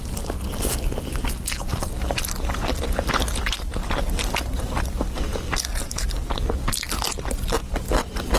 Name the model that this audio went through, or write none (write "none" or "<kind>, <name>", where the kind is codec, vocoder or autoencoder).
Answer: none